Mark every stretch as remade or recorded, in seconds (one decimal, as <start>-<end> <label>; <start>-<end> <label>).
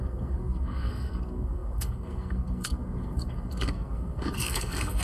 0.0-5.0 remade